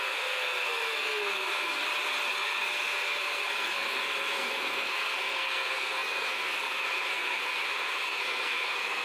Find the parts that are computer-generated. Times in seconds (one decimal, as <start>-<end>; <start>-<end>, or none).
0.0-1.8; 2.3-9.0